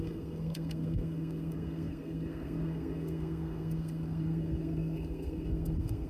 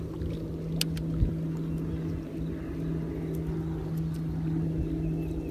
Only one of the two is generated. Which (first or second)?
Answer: first